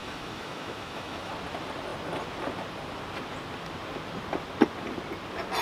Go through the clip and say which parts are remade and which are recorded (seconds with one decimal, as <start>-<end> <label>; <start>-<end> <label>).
0.0-1.3 remade; 1.3-5.6 recorded